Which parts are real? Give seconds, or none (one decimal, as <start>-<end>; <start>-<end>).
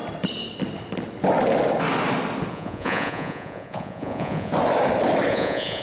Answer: 0.0-2.5; 4.5-5.3